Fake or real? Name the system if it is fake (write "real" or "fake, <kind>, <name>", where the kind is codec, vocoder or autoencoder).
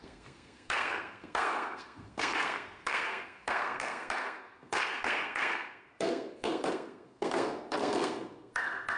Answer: fake, codec, SNAC